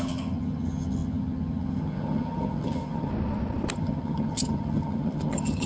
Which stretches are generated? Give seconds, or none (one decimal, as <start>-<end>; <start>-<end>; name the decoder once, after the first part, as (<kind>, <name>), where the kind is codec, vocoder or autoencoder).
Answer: 0.0-3.1 (vocoder, HiFi-GAN); 3.7-5.7